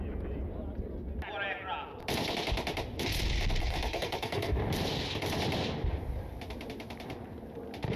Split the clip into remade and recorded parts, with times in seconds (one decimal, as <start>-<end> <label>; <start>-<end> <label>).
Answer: 0.0-3.6 recorded; 3.6-4.6 remade; 4.6-8.0 recorded